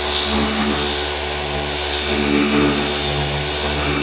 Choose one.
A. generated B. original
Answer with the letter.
B